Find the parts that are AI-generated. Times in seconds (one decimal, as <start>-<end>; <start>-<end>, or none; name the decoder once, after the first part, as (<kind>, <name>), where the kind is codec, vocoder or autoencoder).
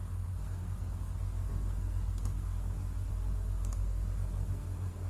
0.0-5.1 (codec, SNAC)